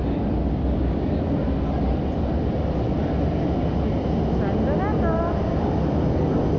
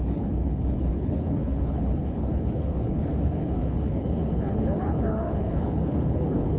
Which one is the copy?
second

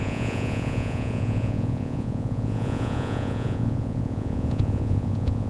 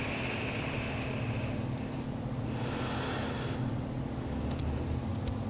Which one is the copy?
first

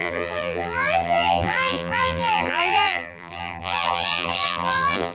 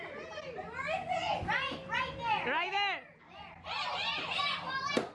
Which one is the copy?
first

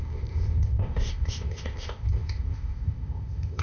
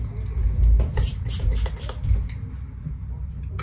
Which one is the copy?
first